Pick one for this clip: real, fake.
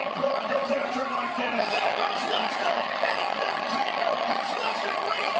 fake